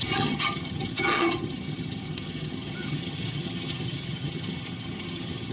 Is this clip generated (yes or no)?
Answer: yes